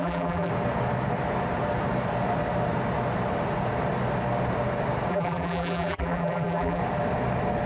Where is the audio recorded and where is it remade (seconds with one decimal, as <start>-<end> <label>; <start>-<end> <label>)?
0.0-0.5 remade; 0.5-5.1 recorded; 5.1-6.8 remade; 6.8-7.7 recorded